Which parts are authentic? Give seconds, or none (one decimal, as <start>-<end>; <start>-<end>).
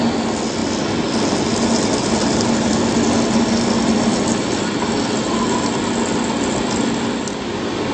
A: 0.0-7.9